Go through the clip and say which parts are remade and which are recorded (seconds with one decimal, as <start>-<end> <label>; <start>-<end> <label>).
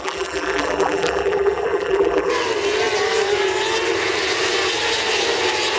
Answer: 0.0-2.3 remade; 2.3-5.8 recorded